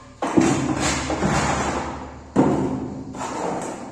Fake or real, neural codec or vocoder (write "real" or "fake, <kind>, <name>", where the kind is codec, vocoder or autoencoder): real